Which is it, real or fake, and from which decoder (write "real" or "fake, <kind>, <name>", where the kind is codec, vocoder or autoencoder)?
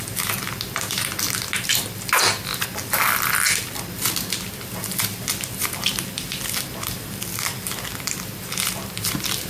real